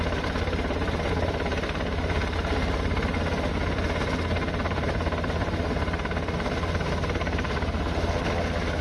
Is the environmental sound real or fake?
real